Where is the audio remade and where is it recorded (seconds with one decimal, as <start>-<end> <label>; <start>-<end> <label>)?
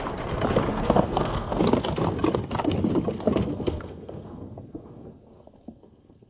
0.0-0.7 recorded; 0.7-1.6 remade; 1.6-3.5 recorded; 3.5-6.3 remade